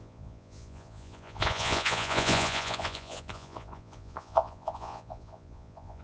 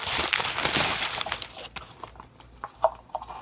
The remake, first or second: first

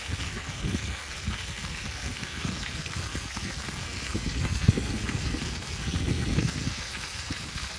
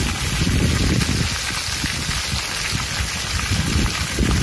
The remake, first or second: first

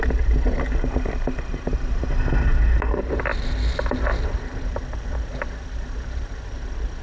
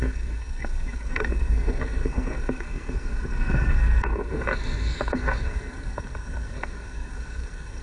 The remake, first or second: second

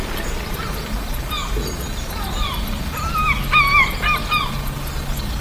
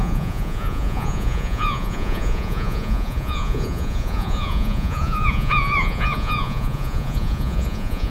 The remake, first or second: second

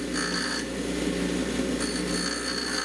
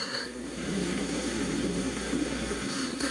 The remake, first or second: second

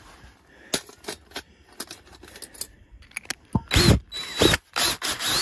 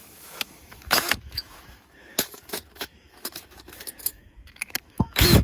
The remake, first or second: second